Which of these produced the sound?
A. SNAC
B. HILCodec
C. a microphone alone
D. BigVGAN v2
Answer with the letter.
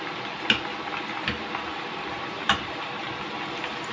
C